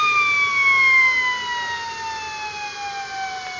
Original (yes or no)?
yes